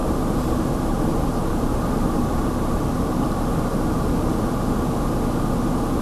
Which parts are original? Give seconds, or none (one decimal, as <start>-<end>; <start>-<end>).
3.6-6.0